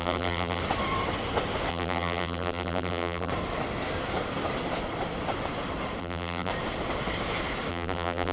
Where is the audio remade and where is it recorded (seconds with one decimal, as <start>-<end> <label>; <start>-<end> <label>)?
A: 0.0-0.6 remade; 0.6-1.7 recorded; 1.7-3.3 remade; 3.3-6.0 recorded; 6.0-6.5 remade; 6.5-7.7 recorded; 7.7-8.3 remade